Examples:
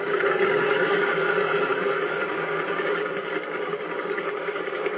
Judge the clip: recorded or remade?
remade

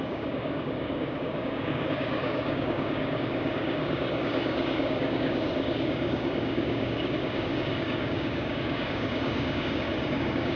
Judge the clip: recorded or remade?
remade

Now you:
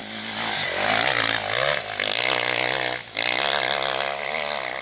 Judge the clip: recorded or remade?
recorded